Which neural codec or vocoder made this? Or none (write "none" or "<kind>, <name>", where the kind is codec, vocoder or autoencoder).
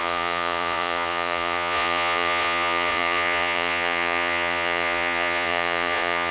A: vocoder, Vocos